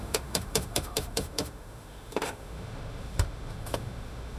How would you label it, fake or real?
fake